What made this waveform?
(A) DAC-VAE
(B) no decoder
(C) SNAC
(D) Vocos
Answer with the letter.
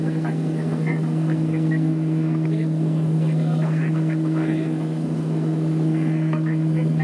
C